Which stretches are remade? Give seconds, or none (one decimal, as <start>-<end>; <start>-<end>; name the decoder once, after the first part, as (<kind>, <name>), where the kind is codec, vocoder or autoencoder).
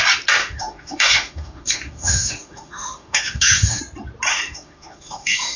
0.4-3.8 (autoencoder, DAC-VAE); 4.3-5.6